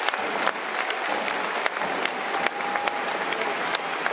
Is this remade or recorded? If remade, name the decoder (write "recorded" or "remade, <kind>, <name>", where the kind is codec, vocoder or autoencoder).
recorded